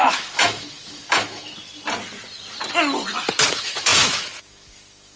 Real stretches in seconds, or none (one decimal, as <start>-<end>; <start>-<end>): 1.5-3.5